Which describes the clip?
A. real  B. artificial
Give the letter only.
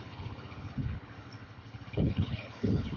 B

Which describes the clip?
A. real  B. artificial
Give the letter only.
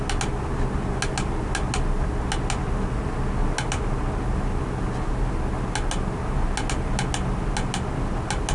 A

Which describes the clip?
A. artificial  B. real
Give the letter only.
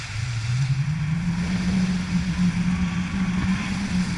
B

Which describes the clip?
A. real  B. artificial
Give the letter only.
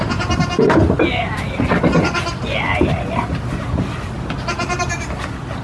A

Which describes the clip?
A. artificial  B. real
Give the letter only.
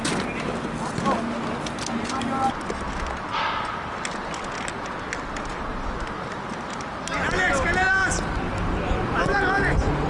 B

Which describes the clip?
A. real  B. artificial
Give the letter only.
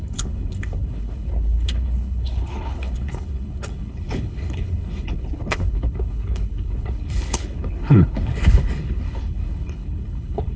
B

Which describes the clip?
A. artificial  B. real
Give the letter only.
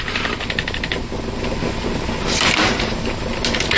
B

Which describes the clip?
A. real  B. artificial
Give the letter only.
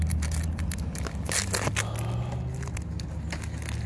A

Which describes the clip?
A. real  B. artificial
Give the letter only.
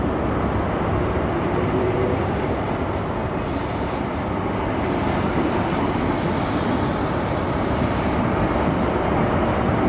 A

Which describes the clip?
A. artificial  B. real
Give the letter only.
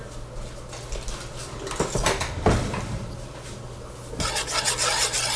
B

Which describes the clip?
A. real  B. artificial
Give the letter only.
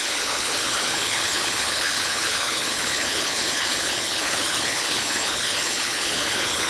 B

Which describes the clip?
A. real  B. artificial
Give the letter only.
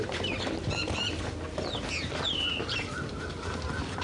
A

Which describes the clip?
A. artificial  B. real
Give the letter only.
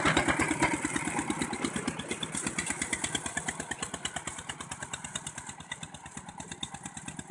B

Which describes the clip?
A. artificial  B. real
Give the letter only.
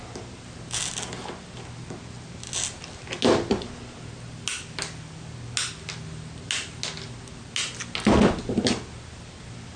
B